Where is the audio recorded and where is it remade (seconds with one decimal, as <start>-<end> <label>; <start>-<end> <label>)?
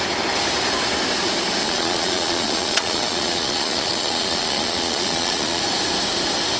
0.0-1.6 recorded; 1.6-5.6 remade; 5.6-6.6 recorded